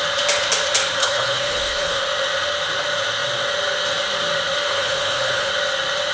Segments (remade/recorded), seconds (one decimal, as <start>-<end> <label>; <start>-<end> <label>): 0.0-1.0 recorded; 1.0-2.0 remade; 2.0-4.7 recorded; 4.7-5.5 remade; 5.5-6.1 recorded